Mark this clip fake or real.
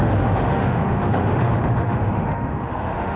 fake